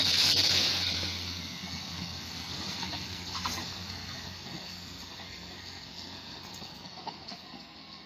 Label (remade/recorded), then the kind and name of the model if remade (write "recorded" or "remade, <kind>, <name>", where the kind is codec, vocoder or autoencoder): remade, codec, SNAC